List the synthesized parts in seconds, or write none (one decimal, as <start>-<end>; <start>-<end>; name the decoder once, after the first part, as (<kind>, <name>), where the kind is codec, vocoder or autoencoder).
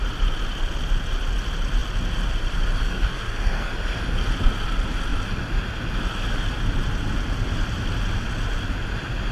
2.8-3.7 (codec, SNAC)